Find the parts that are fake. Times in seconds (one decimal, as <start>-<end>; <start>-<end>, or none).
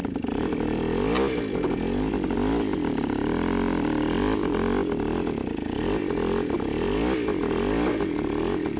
0.0-0.8